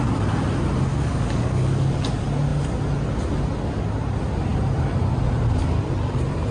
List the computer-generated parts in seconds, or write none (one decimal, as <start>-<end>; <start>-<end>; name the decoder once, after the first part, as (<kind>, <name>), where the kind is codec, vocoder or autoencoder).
0.9-1.9 (codec, DAC)